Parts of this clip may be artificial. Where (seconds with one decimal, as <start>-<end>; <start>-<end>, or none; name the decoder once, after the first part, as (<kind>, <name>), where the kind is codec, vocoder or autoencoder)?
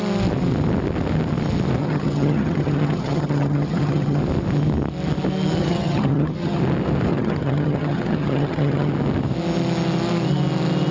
1.8-4.2 (vocoder, HiFi-GAN); 5.6-6.6; 7.1-8.9